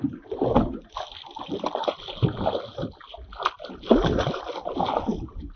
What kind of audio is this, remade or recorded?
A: recorded